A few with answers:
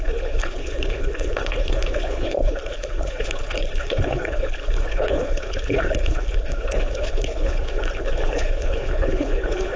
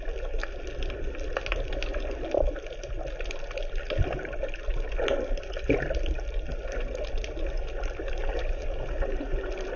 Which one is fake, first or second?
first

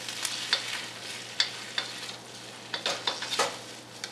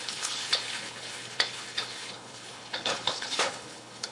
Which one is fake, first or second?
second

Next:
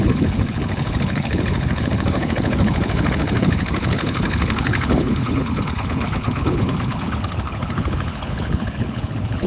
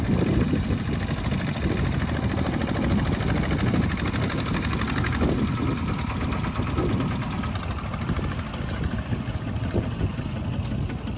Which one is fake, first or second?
first